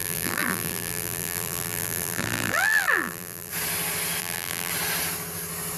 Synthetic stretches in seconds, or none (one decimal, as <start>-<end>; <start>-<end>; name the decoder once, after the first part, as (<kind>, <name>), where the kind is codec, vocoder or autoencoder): 0.0-3.5 (vocoder, BigVGAN v2); 4.2-4.7